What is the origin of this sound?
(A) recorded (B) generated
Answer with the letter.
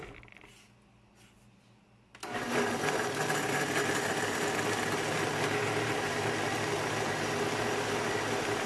A